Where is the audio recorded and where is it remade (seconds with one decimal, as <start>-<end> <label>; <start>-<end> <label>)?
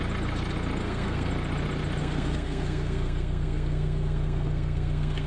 0.0-0.8 recorded; 0.8-1.3 remade; 1.3-2.0 recorded; 2.0-5.3 remade